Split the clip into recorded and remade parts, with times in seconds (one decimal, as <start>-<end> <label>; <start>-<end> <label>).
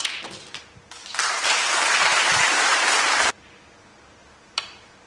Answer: 0.0-1.0 recorded; 1.0-3.3 remade; 3.3-3.9 recorded; 3.9-5.1 remade